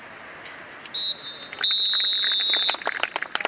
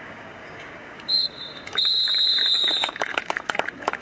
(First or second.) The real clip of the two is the first